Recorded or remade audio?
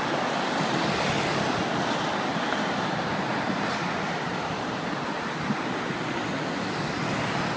recorded